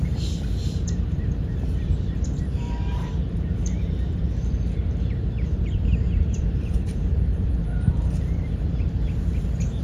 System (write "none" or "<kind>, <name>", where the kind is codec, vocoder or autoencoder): vocoder, BigVGAN v2